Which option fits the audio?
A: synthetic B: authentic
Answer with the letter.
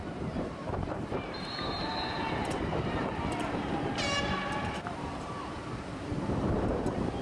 A